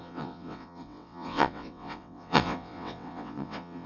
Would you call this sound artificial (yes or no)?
yes